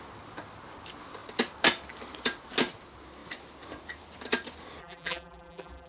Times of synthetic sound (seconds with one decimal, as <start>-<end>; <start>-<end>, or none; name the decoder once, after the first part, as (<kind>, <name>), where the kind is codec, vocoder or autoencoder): 4.8-5.9 (vocoder, BigVGAN v2)